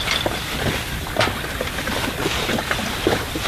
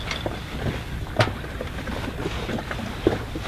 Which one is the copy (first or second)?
first